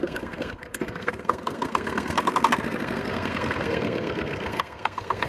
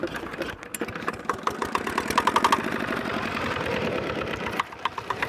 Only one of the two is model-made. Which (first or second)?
first